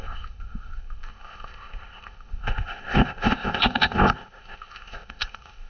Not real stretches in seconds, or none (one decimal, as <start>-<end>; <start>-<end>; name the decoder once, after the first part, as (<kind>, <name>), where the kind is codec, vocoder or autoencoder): 0.0-5.7 (codec, ZipCodec)